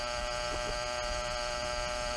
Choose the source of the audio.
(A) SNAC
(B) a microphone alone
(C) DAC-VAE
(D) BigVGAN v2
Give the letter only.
B